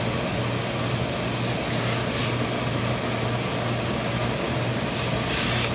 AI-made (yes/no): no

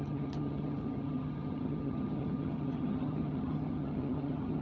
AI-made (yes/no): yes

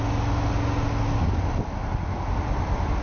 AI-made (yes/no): no